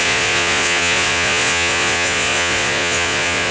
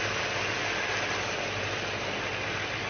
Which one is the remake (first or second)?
first